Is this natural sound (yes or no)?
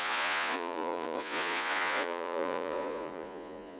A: no